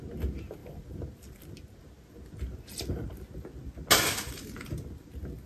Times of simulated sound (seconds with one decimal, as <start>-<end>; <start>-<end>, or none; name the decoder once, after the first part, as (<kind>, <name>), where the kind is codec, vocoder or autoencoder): none